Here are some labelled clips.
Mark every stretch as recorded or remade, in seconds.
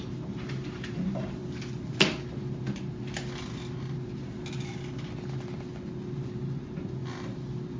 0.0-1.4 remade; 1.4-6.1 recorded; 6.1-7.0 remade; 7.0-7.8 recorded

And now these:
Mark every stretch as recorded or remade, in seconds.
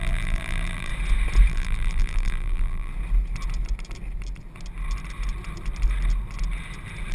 0.0-0.9 remade; 0.9-1.5 recorded; 1.5-2.9 remade; 2.9-7.1 recorded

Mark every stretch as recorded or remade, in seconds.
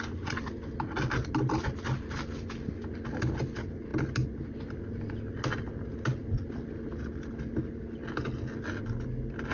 0.0-9.5 recorded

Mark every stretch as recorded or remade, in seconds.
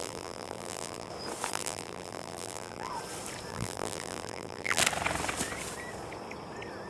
0.0-1.1 remade; 1.1-1.5 recorded; 1.5-2.9 remade; 2.9-3.5 recorded; 3.5-4.8 remade; 4.8-6.9 recorded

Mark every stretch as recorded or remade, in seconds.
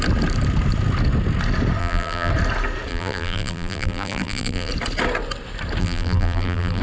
0.0-1.8 recorded; 1.8-2.3 remade; 2.3-2.9 recorded; 2.9-4.7 remade; 4.7-5.8 recorded; 5.8-6.8 remade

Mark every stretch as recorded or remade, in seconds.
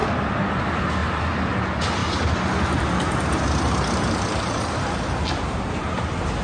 0.0-1.0 recorded; 1.0-1.5 remade; 1.5-2.0 recorded; 2.0-5.8 remade; 5.8-6.4 recorded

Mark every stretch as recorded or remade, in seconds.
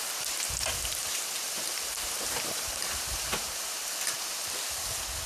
0.0-1.0 recorded; 1.0-3.9 remade; 3.9-5.3 recorded